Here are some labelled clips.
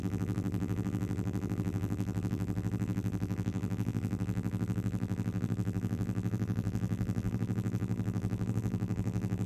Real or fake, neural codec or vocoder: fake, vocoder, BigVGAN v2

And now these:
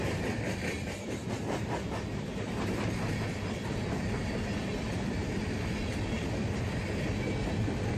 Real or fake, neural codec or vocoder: real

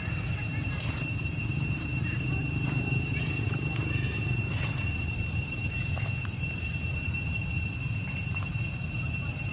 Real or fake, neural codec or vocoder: fake, vocoder, BigVGAN v2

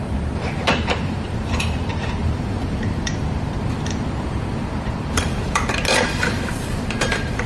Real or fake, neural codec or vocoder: fake, vocoder, BigVGAN v2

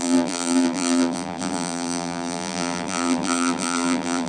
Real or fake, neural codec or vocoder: fake, vocoder, BigVGAN v2